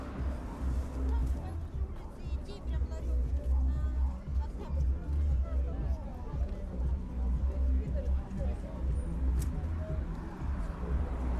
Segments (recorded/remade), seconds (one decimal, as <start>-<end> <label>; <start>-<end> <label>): 0.0-11.4 recorded